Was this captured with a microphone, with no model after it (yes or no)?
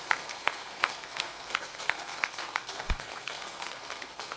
no